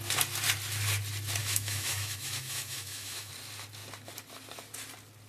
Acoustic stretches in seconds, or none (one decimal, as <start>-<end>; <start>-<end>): 0.0-1.4; 3.3-5.3